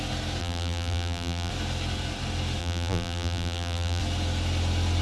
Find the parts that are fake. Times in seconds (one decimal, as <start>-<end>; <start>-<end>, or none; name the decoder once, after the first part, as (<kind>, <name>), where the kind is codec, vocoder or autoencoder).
0.4-1.5 (vocoder, BigVGAN v2); 2.6-4.0